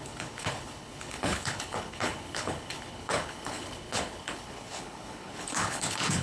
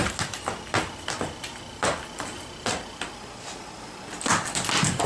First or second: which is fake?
first